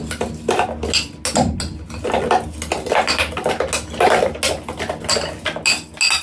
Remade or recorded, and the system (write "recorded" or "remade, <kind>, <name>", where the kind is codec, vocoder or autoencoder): recorded